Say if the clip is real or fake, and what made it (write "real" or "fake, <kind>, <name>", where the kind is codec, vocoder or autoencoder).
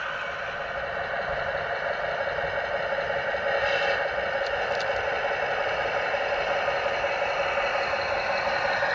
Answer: real